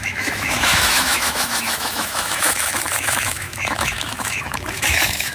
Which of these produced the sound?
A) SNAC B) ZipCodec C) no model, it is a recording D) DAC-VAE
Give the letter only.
D